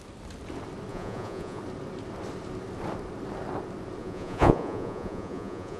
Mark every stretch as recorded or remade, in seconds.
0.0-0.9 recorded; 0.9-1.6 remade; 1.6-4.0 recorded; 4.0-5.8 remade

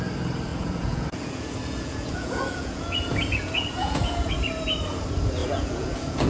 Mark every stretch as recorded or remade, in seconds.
0.0-0.5 recorded; 0.5-4.3 remade; 4.3-5.4 recorded; 5.4-6.3 remade

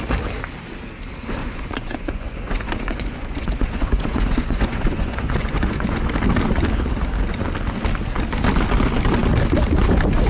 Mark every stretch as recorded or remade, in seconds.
0.0-1.4 recorded; 1.4-6.1 remade; 6.1-10.3 recorded

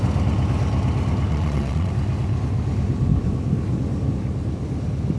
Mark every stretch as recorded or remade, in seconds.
0.0-1.3 recorded; 1.3-1.9 remade; 1.9-5.2 recorded

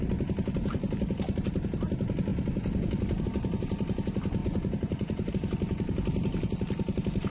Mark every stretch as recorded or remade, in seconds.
0.0-4.4 recorded; 4.4-5.3 remade; 5.3-7.3 recorded